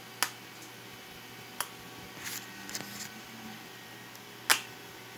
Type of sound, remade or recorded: recorded